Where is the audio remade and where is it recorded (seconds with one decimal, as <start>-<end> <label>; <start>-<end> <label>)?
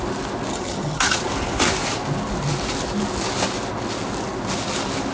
0.0-0.5 recorded; 0.5-1.2 remade; 1.2-5.1 recorded